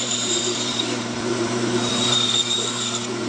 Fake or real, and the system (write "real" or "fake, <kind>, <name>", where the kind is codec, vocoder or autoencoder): fake, vocoder, BigVGAN v2